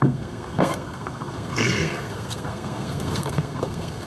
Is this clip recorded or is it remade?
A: remade